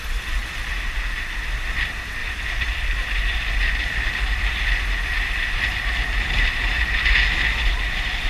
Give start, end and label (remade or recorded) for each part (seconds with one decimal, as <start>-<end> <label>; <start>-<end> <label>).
0.0-0.4 recorded; 0.4-1.3 remade; 1.3-2.2 recorded; 2.2-7.1 remade; 7.1-8.3 recorded